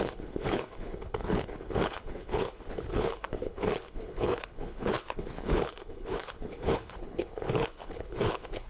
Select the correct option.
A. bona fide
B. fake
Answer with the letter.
B